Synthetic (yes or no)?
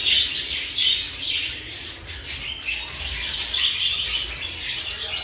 no